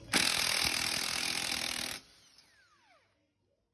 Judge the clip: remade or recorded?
recorded